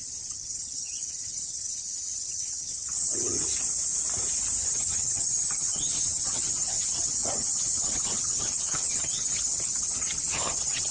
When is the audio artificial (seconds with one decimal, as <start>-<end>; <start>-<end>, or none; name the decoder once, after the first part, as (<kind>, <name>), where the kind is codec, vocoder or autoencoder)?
0.0-3.5 (vocoder, HiFi-GAN); 4.6-10.9